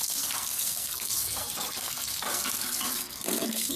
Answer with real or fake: fake